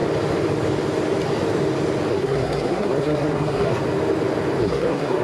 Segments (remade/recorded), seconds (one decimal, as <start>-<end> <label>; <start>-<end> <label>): 0.0-2.1 recorded; 2.1-3.8 remade; 3.8-4.6 recorded; 4.6-5.2 remade